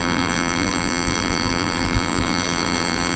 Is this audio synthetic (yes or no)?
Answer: yes